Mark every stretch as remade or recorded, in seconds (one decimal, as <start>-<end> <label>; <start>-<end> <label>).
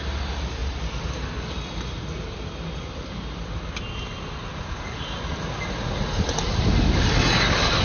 0.0-7.8 recorded